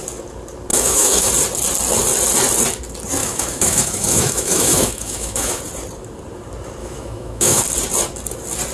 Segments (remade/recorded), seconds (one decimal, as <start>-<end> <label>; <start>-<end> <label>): 0.0-0.7 recorded; 0.7-1.3 remade; 1.3-3.2 recorded; 3.2-5.6 remade; 5.6-6.8 recorded; 6.8-7.6 remade; 7.6-8.7 recorded